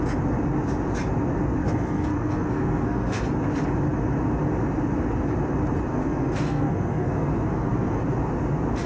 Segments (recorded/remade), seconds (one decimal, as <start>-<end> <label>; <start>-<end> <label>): 0.0-1.6 recorded; 1.6-3.2 remade; 3.2-5.9 recorded; 5.9-8.0 remade; 8.0-8.9 recorded